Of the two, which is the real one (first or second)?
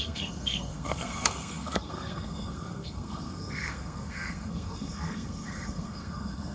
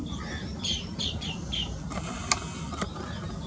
second